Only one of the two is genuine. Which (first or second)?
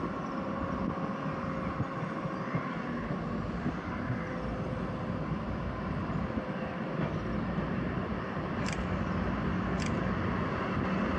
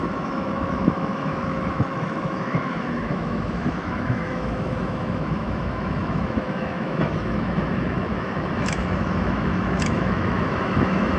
first